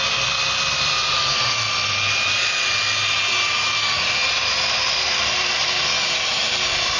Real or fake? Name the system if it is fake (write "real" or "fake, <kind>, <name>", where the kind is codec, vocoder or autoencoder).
real